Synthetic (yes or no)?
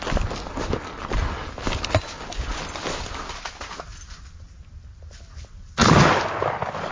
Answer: no